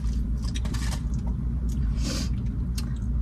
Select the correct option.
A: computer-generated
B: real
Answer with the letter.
B